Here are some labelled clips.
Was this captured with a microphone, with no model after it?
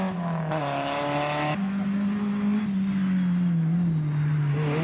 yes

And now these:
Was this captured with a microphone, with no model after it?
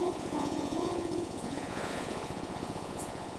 no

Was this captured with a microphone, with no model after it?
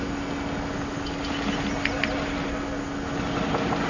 yes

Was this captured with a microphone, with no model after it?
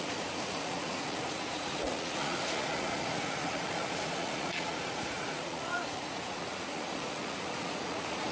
no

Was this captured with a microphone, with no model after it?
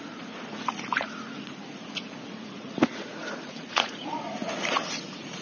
no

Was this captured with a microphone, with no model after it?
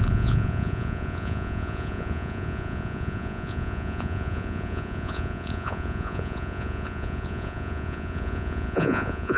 no